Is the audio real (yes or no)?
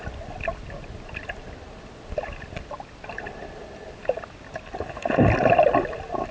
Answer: yes